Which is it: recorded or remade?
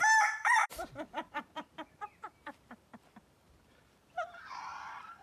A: remade